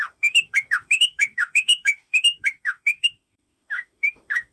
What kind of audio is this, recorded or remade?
remade